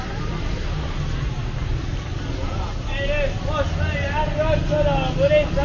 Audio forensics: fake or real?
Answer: real